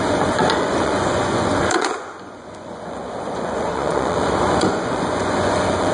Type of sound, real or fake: fake